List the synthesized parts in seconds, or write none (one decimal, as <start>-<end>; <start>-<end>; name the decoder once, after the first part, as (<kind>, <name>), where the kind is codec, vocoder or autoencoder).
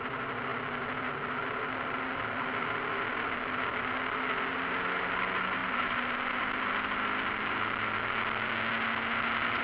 none